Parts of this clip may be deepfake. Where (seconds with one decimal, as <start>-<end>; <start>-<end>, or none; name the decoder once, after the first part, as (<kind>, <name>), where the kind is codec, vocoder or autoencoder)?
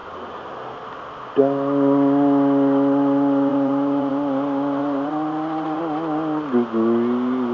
3.5-4.1 (vocoder, Vocos); 4.8-5.8